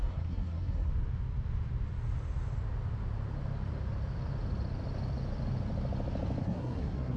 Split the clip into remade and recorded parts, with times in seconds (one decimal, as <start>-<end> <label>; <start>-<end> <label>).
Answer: 0.0-0.9 remade; 0.9-6.4 recorded; 6.4-7.2 remade